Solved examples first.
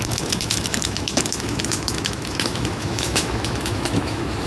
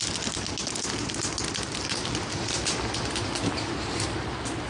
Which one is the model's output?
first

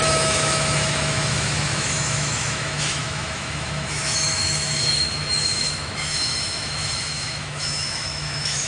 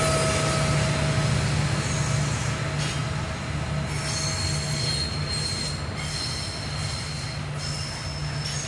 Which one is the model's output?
first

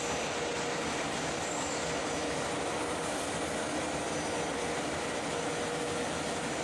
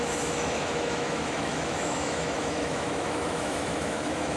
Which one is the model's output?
second